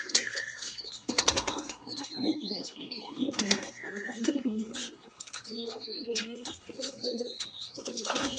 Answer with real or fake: fake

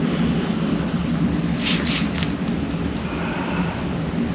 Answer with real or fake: real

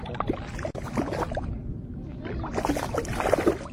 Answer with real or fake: fake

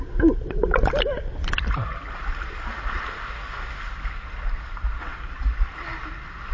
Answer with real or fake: real